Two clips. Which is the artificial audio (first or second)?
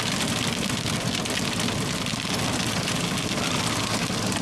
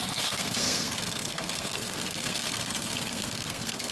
second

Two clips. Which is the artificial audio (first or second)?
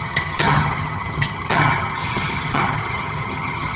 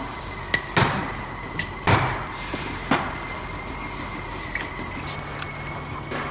first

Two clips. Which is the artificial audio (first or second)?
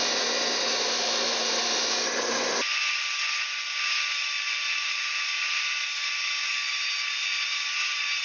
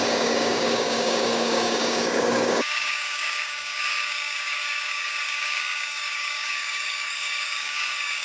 second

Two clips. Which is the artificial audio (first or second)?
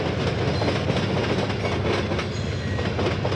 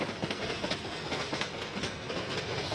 second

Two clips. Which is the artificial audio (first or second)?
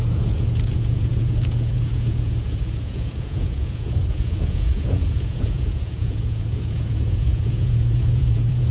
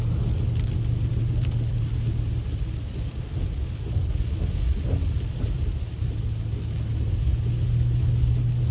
first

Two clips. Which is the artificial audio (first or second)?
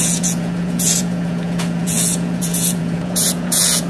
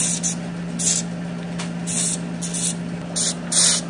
first